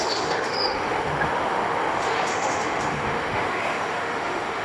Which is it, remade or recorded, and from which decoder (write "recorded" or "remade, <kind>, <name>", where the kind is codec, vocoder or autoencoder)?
remade, autoencoder, DAC-VAE